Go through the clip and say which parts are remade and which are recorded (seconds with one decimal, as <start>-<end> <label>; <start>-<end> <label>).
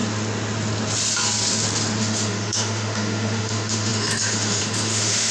0.0-2.0 recorded; 2.0-5.3 remade